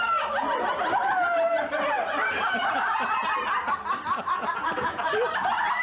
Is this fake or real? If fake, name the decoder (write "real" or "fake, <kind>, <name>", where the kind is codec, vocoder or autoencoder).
real